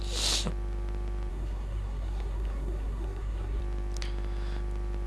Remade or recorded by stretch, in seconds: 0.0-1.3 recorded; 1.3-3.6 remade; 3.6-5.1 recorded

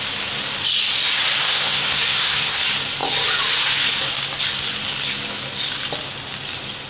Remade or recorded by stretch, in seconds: 0.0-1.4 recorded; 1.4-2.6 remade; 2.6-6.9 recorded

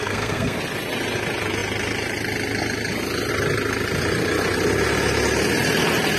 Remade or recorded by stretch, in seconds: 0.0-0.6 remade; 0.6-6.2 recorded